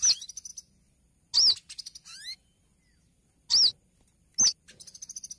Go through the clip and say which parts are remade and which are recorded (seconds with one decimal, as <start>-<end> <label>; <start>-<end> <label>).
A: 0.0-5.4 recorded